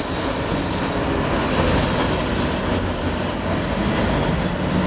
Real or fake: real